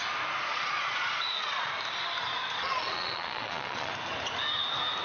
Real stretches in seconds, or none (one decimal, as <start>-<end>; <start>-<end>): 0.0-0.5; 1.7-2.4; 3.9-5.0

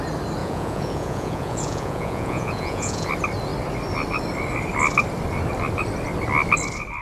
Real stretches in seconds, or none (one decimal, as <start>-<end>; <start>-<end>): 0.0-0.4; 3.1-7.0

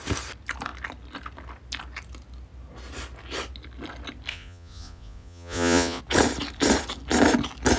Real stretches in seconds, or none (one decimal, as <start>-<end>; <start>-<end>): 0.0-4.3; 6.0-7.8

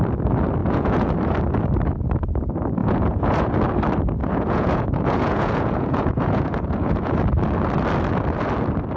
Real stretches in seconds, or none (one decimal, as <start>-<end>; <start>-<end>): 0.0-0.6; 1.1-2.8; 3.5-4.2; 7.2-9.0